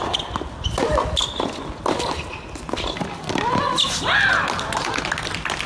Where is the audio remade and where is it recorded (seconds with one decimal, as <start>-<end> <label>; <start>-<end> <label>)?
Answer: 0.0-5.7 recorded